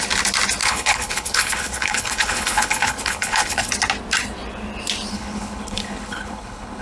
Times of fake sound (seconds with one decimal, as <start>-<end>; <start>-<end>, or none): 0.6-3.7; 5.1-6.8